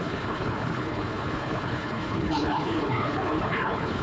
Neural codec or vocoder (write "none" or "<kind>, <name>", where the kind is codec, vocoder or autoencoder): codec, HILCodec